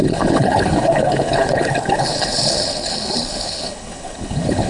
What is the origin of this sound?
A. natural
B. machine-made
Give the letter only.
B